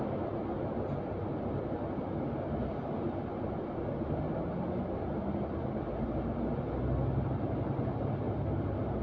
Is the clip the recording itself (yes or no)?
yes